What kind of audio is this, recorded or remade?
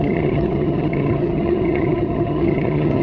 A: remade